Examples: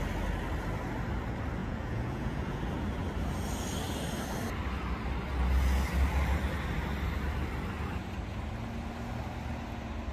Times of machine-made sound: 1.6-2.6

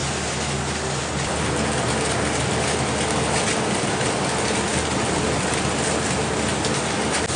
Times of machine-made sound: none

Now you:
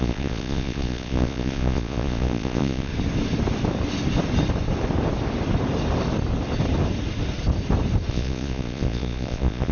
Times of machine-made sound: 0.0-2.9; 8.1-9.7

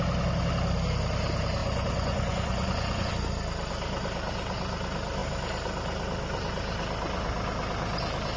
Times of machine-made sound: 1.6-3.1

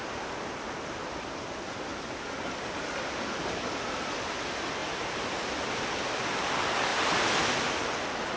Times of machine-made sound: none

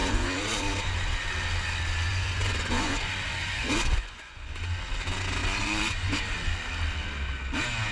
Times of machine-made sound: 0.0-0.6; 2.1-4.6; 5.4-6.2